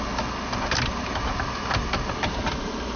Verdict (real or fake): real